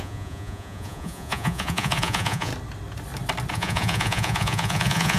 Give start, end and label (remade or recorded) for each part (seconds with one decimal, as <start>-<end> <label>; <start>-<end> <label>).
0.0-2.5 remade; 2.5-3.5 recorded; 3.5-5.2 remade